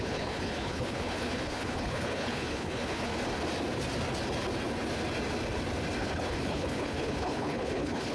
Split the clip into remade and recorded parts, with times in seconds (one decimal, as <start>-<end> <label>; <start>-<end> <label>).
0.0-3.1 remade; 3.1-6.0 recorded; 6.0-8.1 remade